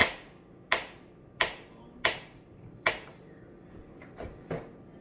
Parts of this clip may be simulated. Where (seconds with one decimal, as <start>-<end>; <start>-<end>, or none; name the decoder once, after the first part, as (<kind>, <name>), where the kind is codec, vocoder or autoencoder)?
none